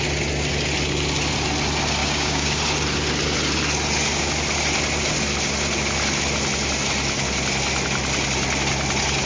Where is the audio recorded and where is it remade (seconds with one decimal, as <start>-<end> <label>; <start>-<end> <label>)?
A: 0.0-2.0 recorded; 2.0-2.6 remade; 2.6-9.3 recorded